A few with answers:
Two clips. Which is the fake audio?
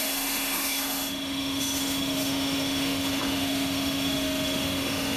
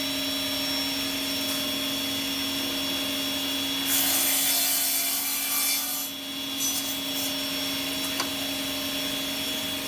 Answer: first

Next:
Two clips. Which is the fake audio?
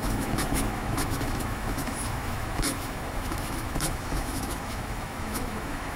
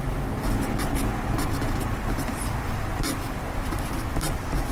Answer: first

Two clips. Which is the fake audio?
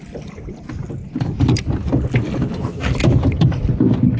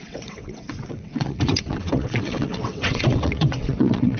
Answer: second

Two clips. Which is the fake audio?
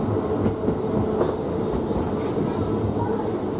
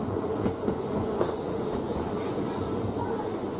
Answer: second